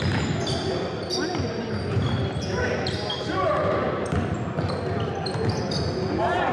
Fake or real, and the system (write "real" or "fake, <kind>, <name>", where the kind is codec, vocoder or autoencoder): real